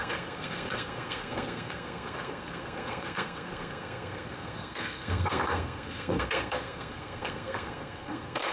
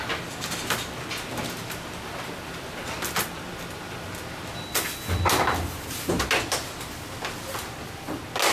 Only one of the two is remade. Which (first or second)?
first